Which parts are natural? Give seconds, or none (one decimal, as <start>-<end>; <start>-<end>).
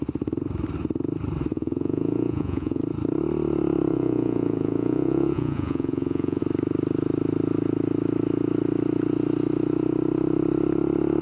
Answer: 0.0-1.5; 2.8-3.9; 6.4-11.2